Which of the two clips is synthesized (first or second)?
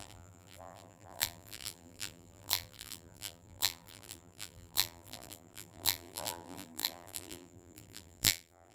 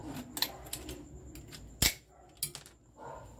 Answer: first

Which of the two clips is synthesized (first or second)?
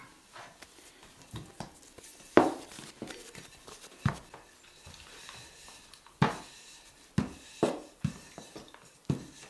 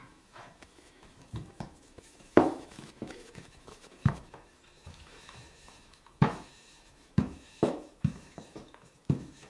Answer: second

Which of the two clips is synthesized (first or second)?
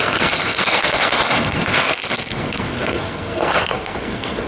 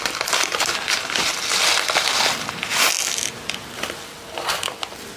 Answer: first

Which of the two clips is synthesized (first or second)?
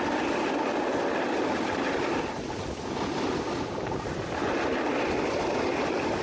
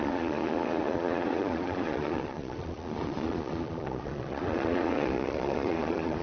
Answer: second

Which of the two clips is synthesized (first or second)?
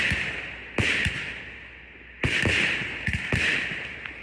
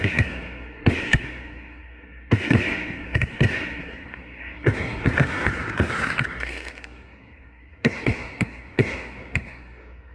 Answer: second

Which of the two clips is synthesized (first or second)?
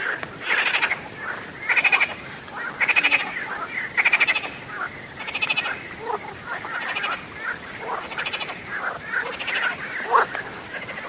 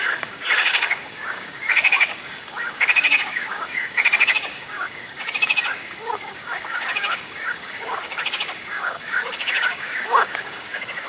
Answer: second